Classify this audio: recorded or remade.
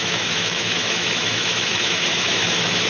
remade